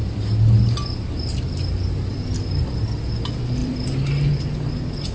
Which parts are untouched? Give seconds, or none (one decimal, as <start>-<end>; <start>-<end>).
3.1-3.6; 4.3-5.1